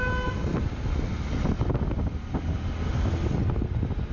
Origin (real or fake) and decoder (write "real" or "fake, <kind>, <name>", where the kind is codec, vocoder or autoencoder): real